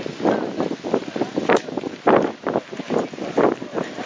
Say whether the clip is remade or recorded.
recorded